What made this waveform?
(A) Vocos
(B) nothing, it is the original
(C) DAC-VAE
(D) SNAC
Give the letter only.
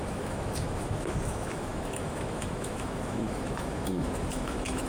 C